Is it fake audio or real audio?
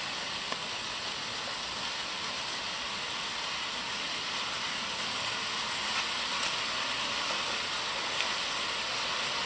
real